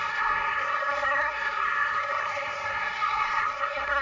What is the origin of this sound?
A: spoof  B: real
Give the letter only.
A